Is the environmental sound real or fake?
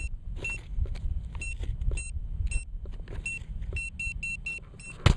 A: real